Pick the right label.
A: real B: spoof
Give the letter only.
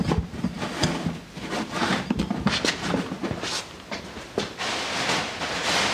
A